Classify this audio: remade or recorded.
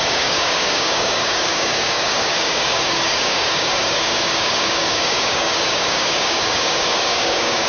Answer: remade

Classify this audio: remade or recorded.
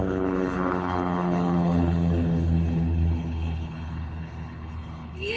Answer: remade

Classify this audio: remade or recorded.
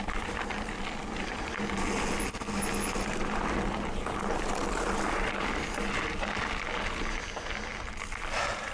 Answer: recorded